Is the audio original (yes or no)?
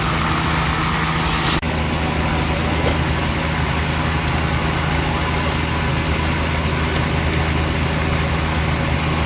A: yes